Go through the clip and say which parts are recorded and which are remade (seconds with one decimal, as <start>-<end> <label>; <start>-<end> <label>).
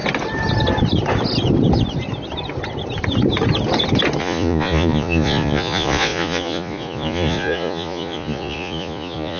0.0-4.2 recorded; 4.2-9.4 remade